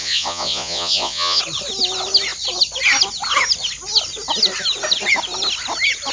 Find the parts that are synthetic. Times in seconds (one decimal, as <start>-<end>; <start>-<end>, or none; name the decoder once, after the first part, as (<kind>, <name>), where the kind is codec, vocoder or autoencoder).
0.0-1.4 (vocoder, Vocos)